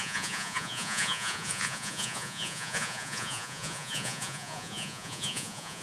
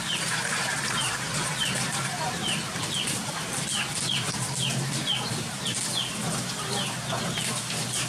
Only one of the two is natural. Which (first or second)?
second